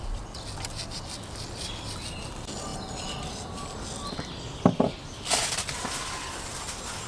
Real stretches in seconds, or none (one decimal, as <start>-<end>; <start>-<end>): 0.0-7.1